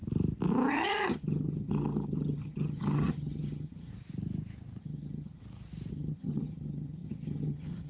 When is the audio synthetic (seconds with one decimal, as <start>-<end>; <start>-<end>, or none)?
0.7-3.9; 4.8-5.4; 5.9-7.9